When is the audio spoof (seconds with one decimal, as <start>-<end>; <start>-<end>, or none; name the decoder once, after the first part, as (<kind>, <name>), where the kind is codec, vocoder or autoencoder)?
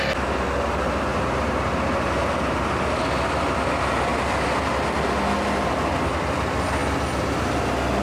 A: 1.1-3.1 (vocoder, BigVGAN v2)